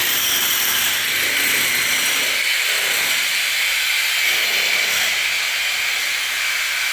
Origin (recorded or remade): recorded